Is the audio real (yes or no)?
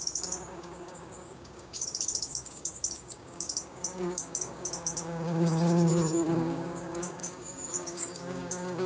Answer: no